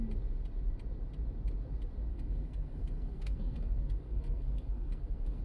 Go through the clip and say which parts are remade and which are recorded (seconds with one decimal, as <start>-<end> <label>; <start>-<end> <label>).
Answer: 0.0-2.1 recorded; 2.1-5.4 remade